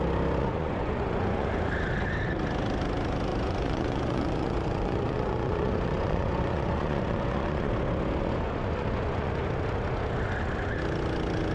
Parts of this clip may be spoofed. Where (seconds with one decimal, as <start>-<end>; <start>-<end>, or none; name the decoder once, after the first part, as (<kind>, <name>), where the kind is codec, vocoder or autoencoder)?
0.4-1.5 (vocoder, Vocos); 3.3-7.7; 8.2-9.3